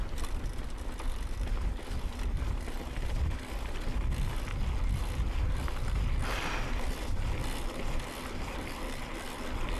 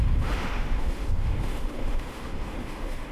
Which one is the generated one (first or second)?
second